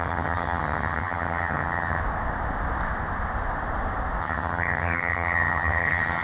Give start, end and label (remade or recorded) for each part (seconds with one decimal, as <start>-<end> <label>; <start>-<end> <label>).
0.0-2.0 remade; 2.0-4.2 recorded; 4.2-6.2 remade